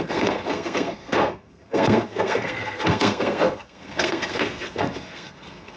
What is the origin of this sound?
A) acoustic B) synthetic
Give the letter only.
B